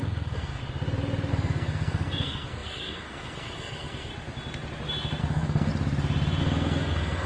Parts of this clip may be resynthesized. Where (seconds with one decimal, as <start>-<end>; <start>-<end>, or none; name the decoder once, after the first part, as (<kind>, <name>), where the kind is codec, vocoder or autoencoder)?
0.0-0.6 (codec, SNAC); 1.3-4.1; 5.2-5.7; 6.4-7.3